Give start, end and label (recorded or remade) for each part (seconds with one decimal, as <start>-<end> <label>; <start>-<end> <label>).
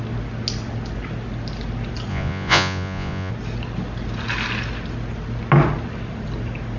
0.0-2.1 recorded; 2.1-3.3 remade; 3.3-6.8 recorded